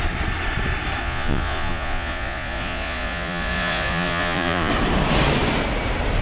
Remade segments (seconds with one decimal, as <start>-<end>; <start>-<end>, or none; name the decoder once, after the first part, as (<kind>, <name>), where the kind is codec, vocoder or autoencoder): 1.0-4.7 (vocoder, Vocos)